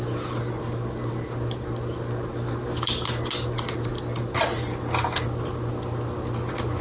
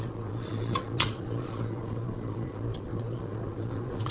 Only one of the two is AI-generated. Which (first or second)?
second